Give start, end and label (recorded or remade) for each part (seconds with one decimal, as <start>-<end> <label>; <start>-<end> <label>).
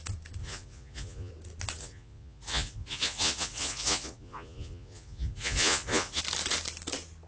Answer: 0.0-0.4 recorded; 0.4-1.3 remade; 1.3-1.8 recorded; 1.8-6.2 remade; 6.2-7.3 recorded